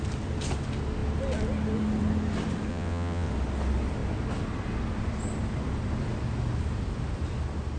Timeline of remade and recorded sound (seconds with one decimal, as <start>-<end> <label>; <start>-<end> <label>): 0.0-2.7 recorded; 2.7-3.3 remade; 3.3-7.8 recorded